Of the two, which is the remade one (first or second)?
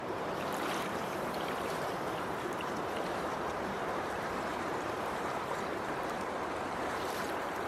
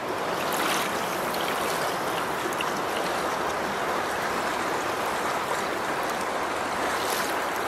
first